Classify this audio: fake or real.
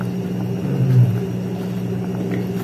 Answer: real